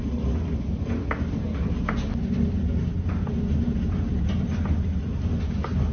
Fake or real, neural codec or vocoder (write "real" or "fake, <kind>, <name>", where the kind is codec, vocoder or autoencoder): real